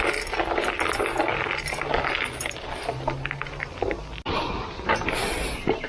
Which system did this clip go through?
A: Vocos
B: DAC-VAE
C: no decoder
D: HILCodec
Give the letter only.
C